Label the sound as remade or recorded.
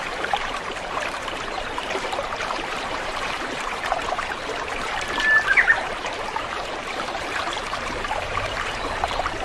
remade